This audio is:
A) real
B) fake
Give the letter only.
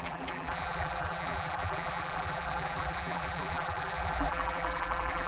B